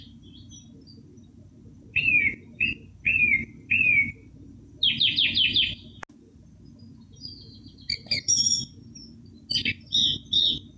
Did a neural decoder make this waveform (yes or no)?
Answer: no